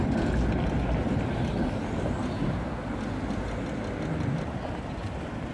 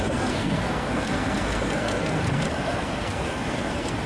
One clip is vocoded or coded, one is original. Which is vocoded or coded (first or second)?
second